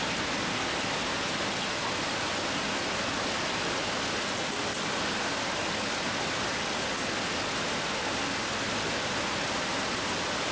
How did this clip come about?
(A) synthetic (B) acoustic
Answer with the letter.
B